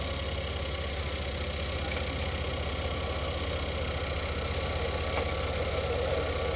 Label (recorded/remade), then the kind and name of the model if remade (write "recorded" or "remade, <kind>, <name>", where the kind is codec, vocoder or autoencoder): recorded